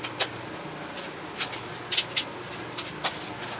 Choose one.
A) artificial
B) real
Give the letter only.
B